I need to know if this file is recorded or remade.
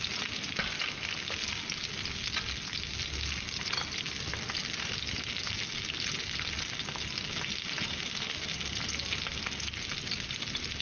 recorded